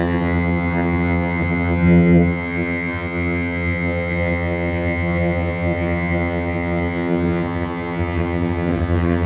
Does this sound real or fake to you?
fake